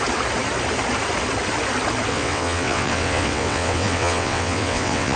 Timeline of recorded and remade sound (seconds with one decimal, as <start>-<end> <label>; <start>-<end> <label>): 0.0-2.1 recorded; 2.1-5.2 remade